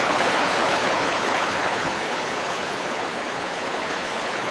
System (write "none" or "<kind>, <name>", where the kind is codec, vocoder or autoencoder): codec, HILCodec